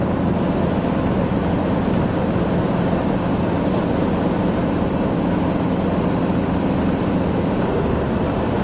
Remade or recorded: recorded